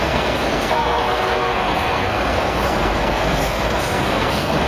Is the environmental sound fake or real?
fake